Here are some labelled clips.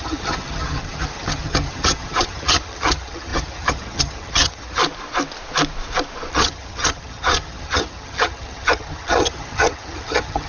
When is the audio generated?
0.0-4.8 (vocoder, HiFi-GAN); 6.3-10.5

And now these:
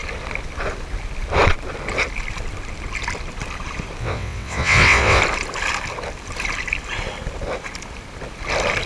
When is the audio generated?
4.0-5.2 (vocoder, WaveNeXt)